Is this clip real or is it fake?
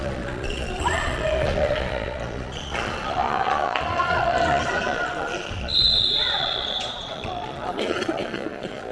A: fake